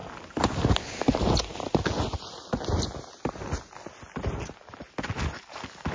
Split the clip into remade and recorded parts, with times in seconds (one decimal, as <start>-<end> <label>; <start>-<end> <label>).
0.0-5.9 recorded